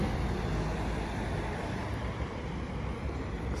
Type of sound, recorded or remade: remade